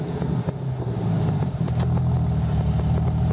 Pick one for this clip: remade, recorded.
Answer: recorded